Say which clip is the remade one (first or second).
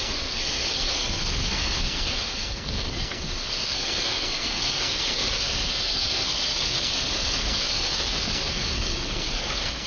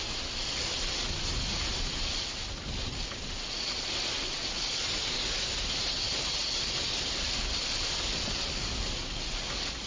first